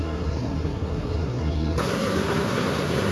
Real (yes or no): no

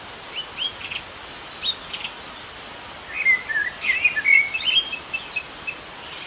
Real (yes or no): yes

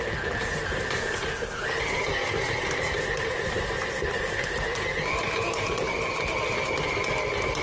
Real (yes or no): yes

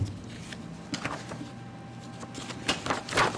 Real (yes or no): yes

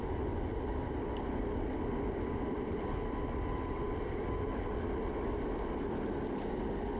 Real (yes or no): yes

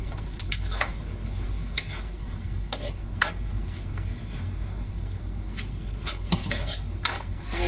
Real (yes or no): no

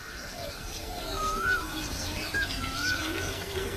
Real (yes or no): no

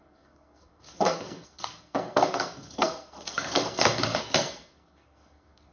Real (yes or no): no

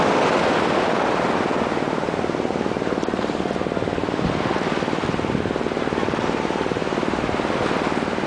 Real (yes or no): yes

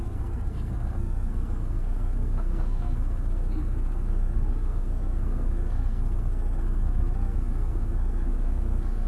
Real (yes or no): no